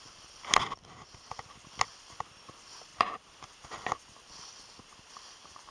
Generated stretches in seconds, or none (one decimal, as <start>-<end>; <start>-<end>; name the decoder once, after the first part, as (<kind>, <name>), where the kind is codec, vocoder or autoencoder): none